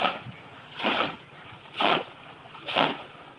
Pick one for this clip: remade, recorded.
remade